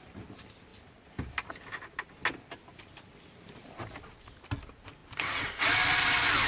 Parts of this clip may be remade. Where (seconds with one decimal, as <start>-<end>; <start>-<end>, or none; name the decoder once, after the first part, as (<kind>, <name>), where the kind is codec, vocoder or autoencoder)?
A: none